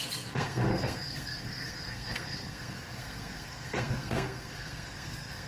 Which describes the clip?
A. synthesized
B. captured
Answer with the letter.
A